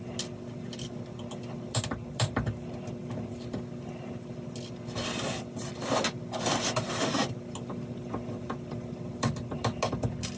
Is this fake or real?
real